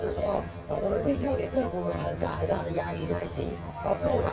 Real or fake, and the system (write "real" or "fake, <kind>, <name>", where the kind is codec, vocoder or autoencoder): fake, vocoder, HiFi-GAN